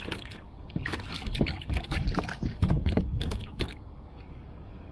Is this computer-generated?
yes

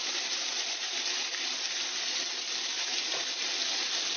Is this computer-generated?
no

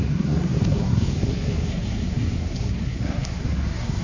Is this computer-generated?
yes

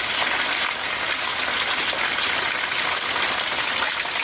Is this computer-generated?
no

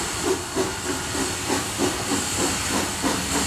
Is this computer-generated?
no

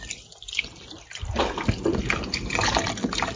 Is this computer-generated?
no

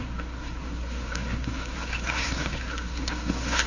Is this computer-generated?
yes